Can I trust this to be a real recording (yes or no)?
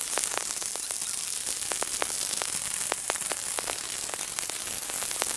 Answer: yes